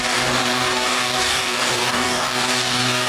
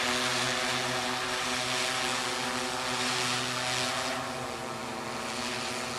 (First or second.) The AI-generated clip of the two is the first